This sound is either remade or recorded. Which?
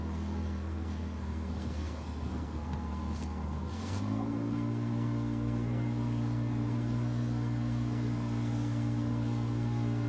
remade